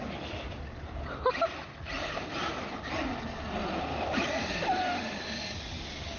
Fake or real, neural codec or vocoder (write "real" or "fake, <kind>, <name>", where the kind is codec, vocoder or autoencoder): real